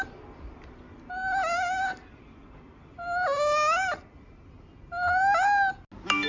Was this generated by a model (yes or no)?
no